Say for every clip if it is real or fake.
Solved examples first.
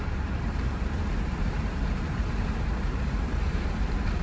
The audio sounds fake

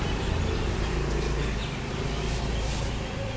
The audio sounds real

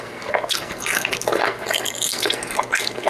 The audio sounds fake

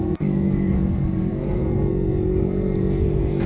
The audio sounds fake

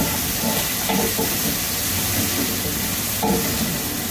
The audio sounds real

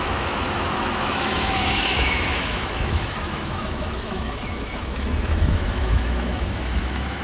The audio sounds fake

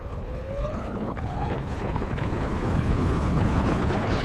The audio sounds fake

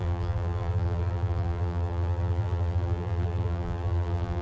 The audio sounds fake